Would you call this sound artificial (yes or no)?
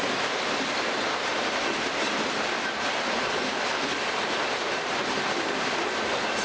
no